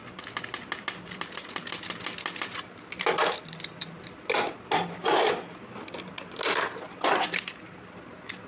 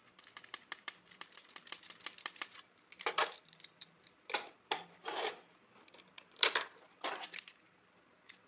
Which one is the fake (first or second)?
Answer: second